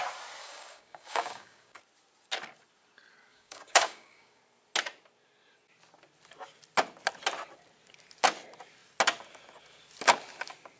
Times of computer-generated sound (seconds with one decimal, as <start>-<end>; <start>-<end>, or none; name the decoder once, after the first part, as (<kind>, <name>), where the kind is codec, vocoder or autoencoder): 0.4-1.8 (codec, DAC); 3.3-4.4